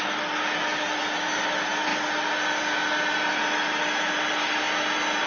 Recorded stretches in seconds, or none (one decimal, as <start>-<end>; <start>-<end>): 0.0-5.3

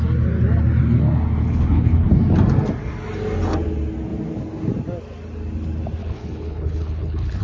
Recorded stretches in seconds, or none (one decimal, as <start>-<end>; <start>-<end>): 0.0-1.4; 2.1-6.0

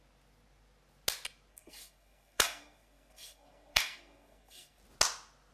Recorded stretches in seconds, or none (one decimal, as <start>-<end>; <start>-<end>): 0.0-1.5; 4.8-5.5

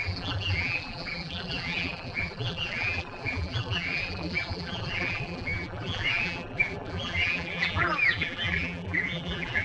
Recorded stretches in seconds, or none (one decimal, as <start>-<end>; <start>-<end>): none

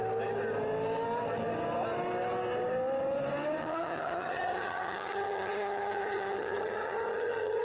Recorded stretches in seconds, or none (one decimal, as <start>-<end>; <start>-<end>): 0.0-3.6

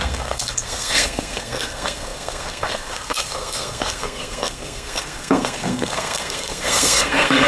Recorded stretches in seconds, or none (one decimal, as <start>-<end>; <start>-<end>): none

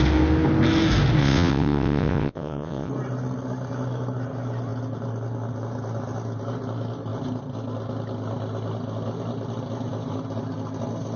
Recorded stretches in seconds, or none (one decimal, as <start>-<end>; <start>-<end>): 0.0-1.2; 2.9-11.2

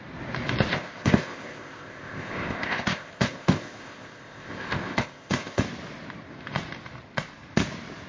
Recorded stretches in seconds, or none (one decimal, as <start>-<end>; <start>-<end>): 0.0-0.7; 5.6-8.1